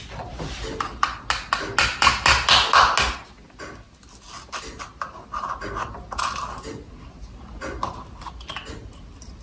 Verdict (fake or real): real